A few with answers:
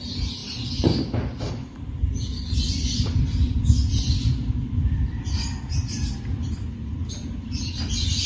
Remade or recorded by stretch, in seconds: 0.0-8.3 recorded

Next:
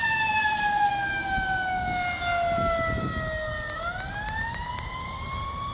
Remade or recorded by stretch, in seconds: 0.0-0.9 remade; 0.9-5.7 recorded

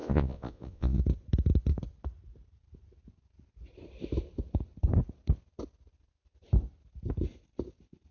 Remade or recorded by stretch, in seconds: 0.0-1.0 remade; 1.0-8.1 recorded

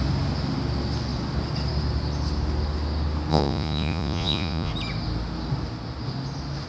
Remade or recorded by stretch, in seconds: 0.0-3.3 recorded; 3.3-4.7 remade; 4.7-6.7 recorded